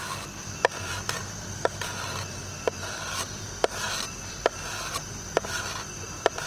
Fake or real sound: real